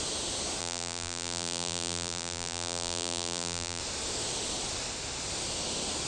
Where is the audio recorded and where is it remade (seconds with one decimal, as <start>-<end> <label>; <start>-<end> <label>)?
0.0-0.6 recorded; 0.6-3.8 remade; 3.8-6.1 recorded